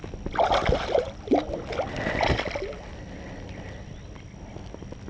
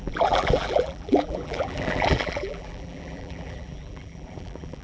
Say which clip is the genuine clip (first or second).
first